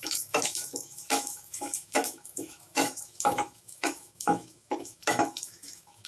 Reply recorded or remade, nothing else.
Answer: remade